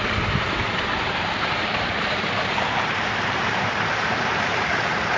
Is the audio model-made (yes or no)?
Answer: yes